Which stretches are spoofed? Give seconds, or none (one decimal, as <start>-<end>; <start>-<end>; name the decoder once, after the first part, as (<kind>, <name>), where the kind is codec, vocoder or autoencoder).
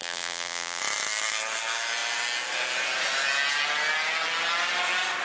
0.0-0.8 (vocoder, BigVGAN v2)